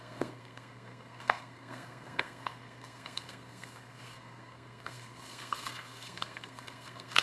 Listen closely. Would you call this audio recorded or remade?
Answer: remade